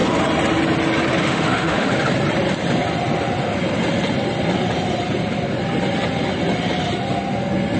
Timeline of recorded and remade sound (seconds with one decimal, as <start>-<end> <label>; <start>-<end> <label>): 0.0-1.2 recorded; 1.2-1.9 remade; 1.9-7.8 recorded